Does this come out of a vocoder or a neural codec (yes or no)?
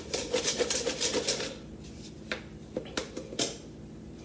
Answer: no